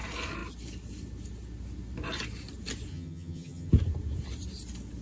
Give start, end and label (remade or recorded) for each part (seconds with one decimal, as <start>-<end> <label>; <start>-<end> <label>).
0.0-2.9 recorded; 2.9-3.7 remade; 3.7-5.0 recorded